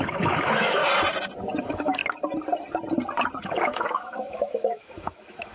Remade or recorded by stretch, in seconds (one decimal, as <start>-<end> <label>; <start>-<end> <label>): 0.0-0.8 remade; 0.8-1.6 recorded; 1.6-2.0 remade; 2.0-3.4 recorded; 3.4-5.5 remade